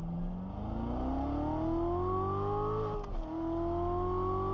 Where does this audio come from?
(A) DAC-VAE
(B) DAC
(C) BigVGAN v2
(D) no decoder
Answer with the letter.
D